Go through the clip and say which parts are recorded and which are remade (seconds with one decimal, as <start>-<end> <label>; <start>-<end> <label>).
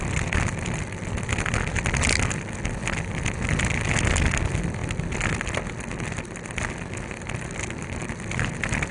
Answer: 0.0-8.9 recorded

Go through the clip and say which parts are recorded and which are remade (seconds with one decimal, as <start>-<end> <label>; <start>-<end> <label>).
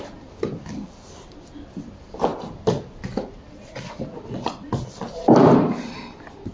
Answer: 0.0-6.5 recorded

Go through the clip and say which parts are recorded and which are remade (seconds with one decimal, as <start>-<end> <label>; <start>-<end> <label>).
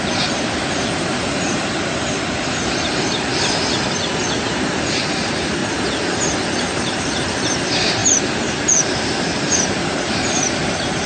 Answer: 0.0-3.3 remade; 3.3-4.2 recorded; 4.2-5.6 remade; 5.6-6.6 recorded; 6.6-11.1 remade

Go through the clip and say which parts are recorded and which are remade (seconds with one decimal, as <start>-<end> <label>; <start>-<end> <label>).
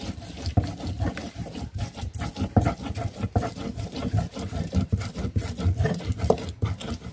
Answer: 0.0-1.2 recorded; 1.2-2.0 remade; 2.0-7.1 recorded